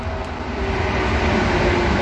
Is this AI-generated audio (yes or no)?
no